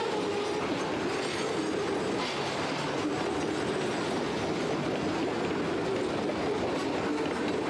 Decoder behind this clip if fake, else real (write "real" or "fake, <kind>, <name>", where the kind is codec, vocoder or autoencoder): real